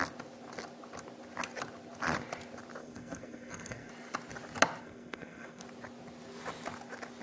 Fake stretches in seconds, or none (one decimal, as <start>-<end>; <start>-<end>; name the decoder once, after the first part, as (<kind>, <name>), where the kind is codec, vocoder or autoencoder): 2.8-3.9 (codec, SNAC); 4.8-5.6